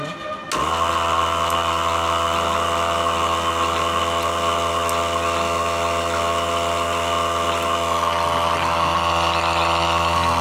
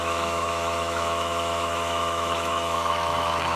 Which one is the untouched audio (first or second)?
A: first